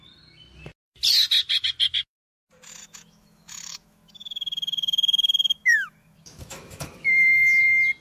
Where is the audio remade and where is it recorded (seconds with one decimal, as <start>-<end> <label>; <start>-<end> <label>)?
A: 0.0-2.8 recorded; 2.8-7.6 remade; 7.6-8.0 recorded